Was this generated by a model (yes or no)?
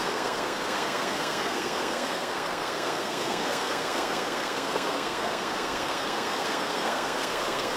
yes